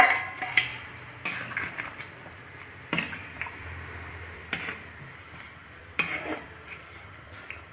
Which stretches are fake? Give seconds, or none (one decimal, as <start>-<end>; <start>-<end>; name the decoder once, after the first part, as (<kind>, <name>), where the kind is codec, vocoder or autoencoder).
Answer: 0.0-7.7 (vocoder, BigVGAN v2)